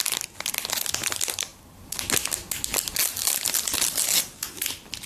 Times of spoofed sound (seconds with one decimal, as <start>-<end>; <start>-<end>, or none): 1.5-2.0